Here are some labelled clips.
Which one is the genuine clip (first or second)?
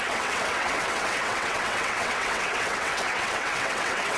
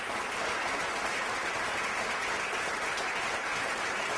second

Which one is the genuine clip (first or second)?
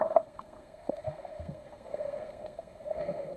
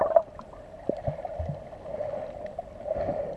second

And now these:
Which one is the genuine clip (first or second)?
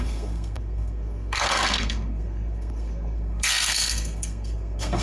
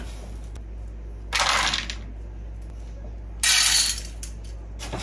second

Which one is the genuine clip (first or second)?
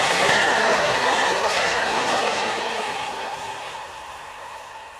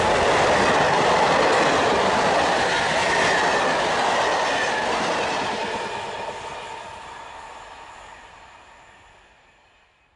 second